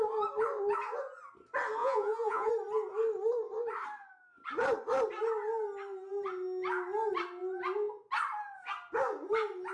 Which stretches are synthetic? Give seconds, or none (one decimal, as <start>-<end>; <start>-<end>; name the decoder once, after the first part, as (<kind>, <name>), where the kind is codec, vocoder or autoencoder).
1.8-2.5 (vocoder, Vocos)